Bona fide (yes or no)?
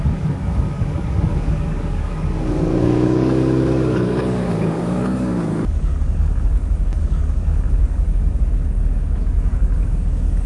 no